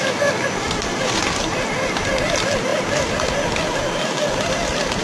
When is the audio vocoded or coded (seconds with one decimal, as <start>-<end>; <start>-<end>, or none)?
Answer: none